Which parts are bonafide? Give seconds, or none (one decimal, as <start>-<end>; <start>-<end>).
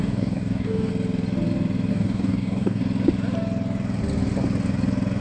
0.9-1.9; 2.8-5.2